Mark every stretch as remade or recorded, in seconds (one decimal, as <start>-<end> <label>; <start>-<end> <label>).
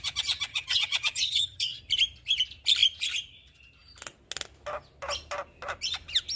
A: 0.0-0.5 recorded; 0.5-1.8 remade; 1.8-6.4 recorded